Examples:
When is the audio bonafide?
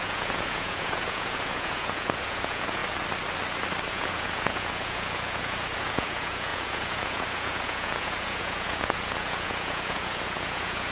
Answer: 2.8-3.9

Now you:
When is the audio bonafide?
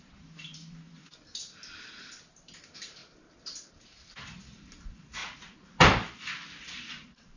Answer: 1.0-2.3; 3.0-3.7; 5.2-6.6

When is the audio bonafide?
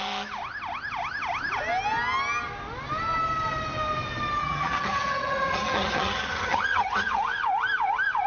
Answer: 0.0-4.4; 7.2-8.3